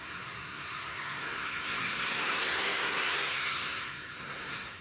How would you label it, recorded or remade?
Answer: remade